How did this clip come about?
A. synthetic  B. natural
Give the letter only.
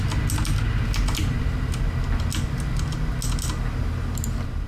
B